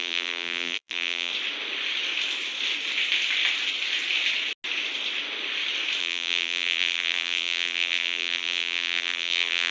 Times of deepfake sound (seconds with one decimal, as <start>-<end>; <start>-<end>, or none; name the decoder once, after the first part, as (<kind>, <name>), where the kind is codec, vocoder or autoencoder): 0.0-1.3 (vocoder, BigVGAN v2); 6.0-9.7